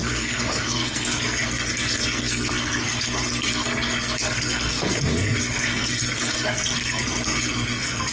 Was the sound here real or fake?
fake